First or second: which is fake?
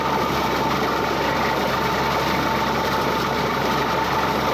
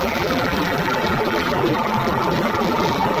second